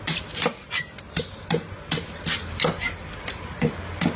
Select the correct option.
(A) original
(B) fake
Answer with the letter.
A